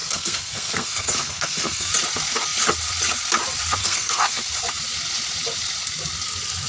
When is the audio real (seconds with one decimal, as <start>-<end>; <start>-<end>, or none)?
1.9-3.8; 4.5-6.7